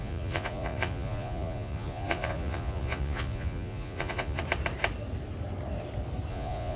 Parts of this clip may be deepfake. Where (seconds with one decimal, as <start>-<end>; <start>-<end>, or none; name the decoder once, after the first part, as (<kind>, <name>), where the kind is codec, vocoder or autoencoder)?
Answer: 0.0-4.4 (vocoder, Vocos); 6.3-6.8